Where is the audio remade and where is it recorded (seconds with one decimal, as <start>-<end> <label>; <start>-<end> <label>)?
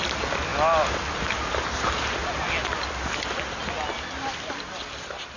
0.0-5.4 recorded